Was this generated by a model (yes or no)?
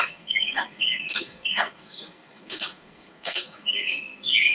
yes